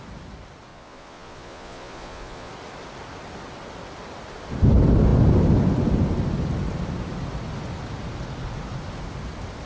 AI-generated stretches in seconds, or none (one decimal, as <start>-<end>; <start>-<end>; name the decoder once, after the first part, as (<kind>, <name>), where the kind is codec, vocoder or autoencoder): 0.7-2.5 (vocoder, Vocos)